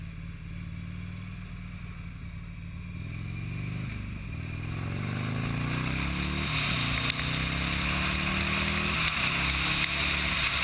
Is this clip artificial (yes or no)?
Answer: no